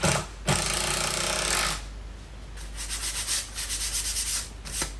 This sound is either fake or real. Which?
real